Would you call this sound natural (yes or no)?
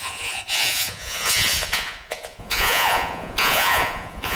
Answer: no